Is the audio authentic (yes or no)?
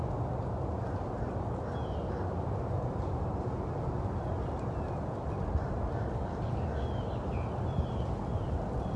yes